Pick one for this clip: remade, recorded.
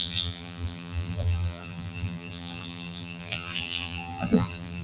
remade